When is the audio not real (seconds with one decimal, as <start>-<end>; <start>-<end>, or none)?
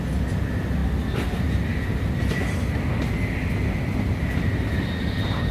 none